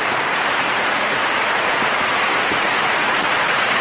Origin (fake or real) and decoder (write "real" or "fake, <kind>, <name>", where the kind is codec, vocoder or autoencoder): fake, vocoder, Vocos